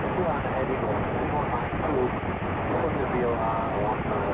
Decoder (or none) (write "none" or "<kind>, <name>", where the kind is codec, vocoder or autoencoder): none